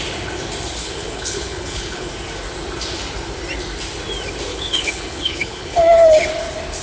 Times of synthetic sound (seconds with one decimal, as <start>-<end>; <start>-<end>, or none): 0.8-2.1; 4.5-6.3